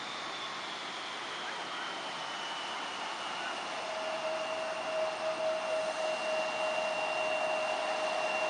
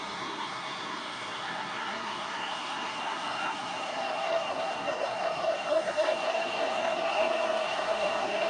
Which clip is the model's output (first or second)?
second